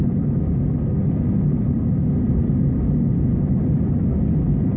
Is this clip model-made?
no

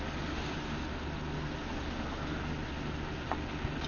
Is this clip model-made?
no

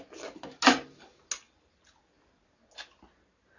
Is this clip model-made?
no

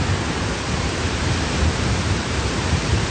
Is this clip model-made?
yes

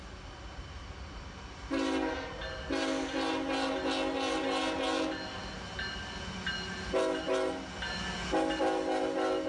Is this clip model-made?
no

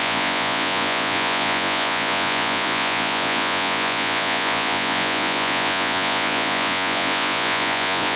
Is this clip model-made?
yes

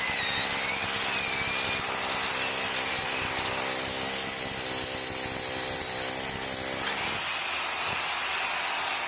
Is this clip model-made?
no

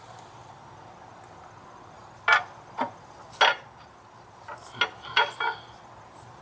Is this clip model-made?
no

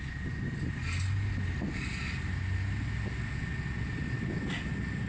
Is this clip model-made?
no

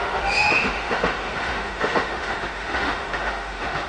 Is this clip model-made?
yes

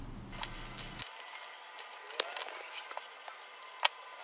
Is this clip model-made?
no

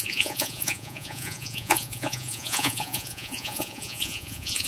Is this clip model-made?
yes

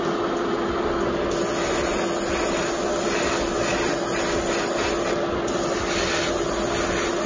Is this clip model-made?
no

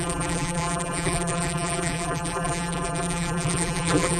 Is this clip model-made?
yes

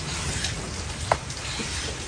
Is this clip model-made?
no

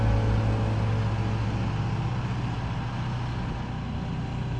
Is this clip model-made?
no